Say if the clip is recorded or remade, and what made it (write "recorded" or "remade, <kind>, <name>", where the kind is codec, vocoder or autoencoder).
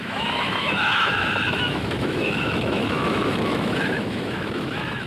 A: remade, autoencoder, DAC-VAE